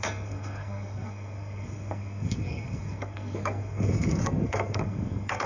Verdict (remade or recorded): remade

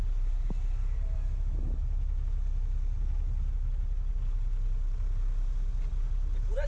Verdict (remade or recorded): recorded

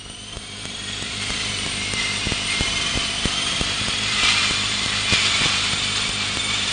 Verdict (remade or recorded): remade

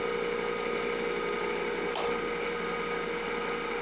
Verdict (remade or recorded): recorded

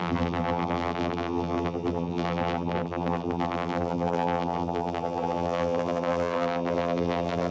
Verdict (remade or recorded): remade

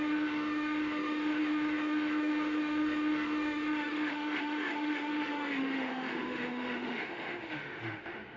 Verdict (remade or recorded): remade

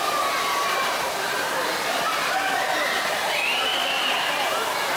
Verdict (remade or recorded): remade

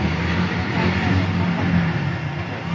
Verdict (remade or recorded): recorded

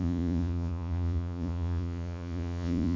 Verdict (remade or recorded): remade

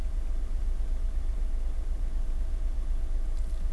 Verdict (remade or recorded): remade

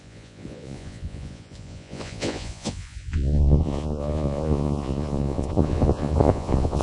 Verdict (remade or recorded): remade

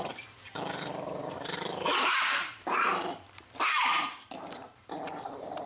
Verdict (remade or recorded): remade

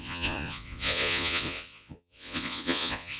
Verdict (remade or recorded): remade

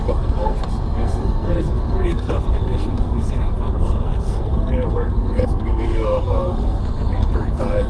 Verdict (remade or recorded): remade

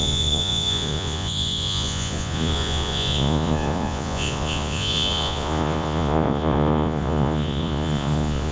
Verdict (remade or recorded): remade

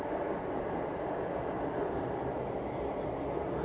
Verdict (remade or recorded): recorded